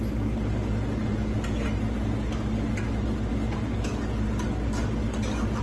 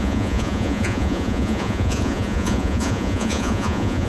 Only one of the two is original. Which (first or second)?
first